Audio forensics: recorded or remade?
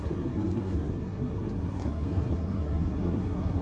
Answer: remade